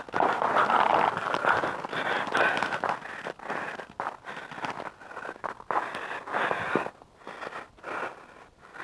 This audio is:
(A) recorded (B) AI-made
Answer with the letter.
A